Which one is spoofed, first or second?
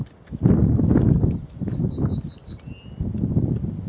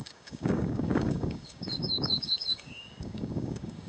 second